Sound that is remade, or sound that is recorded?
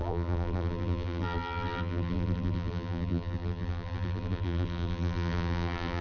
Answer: remade